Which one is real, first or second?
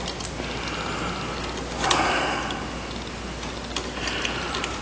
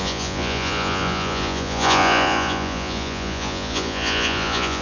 first